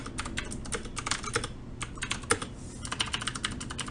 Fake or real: real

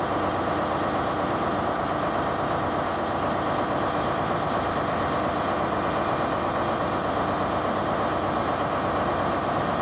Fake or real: real